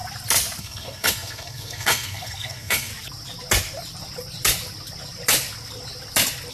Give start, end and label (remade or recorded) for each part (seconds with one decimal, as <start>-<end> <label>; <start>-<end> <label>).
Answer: 0.0-0.6 recorded; 0.6-2.9 remade; 2.9-6.5 recorded